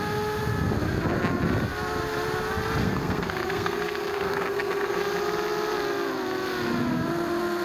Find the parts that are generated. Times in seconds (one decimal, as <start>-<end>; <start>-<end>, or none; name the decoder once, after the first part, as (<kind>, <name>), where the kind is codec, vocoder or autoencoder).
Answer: 2.8-5.0 (codec, SNAC)